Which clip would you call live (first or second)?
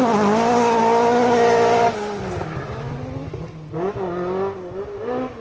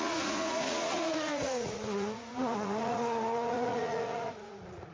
first